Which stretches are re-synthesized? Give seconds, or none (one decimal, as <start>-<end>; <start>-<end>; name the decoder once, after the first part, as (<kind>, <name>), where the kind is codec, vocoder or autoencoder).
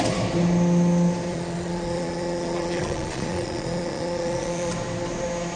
1.3-4.7 (vocoder, Vocos)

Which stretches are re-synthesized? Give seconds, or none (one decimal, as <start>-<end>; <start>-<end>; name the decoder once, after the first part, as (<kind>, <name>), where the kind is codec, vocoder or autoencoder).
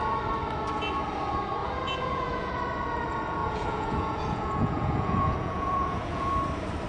1.6-2.5 (vocoder, Vocos); 3.4-6.3